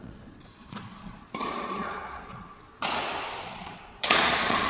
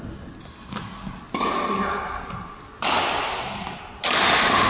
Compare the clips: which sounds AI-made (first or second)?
first